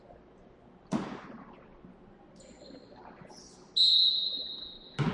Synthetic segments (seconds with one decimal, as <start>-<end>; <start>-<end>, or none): none